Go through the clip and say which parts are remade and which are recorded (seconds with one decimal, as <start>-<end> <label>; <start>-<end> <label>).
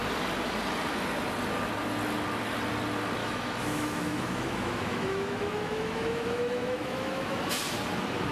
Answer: 0.0-3.2 recorded; 3.2-7.4 remade; 7.4-8.3 recorded